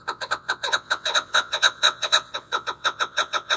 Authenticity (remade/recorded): remade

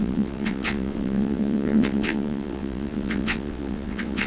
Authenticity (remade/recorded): remade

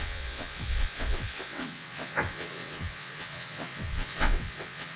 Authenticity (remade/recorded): remade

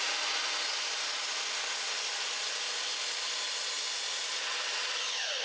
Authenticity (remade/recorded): recorded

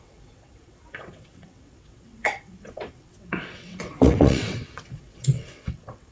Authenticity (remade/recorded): remade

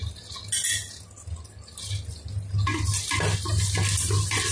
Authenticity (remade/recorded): recorded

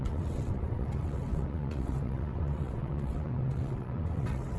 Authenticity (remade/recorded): remade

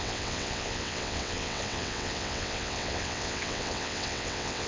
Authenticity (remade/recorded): remade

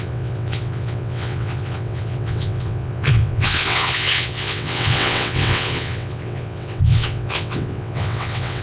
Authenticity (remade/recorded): remade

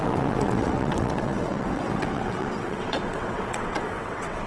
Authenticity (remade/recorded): remade